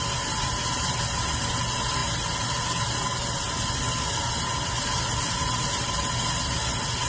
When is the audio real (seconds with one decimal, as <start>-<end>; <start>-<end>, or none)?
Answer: 0.0-7.1